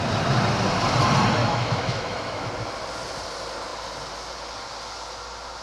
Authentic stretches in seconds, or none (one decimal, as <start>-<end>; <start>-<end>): 0.0-1.4; 2.5-5.6